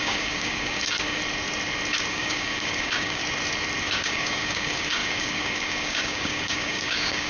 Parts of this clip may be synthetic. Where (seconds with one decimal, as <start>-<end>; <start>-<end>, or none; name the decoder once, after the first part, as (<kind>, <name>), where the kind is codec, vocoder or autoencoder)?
0.0-1.2 (codec, DAC); 2.1-3.2; 3.8-7.3